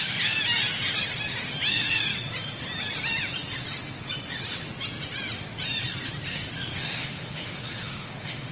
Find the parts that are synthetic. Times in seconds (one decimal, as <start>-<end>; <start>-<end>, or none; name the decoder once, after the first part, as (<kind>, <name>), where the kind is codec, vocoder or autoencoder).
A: 1.7-2.1 (autoencoder, DAC-VAE); 6.3-8.5